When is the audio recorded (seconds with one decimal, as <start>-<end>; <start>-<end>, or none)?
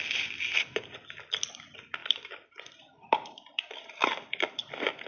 0.0-2.0